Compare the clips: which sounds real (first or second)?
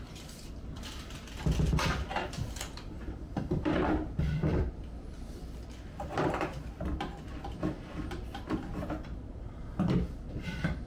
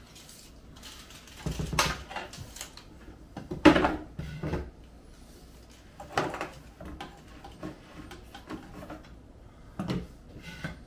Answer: second